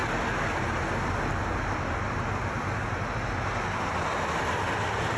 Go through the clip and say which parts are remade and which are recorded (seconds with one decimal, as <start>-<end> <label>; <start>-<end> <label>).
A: 0.0-5.2 recorded